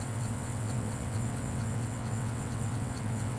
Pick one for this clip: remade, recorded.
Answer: remade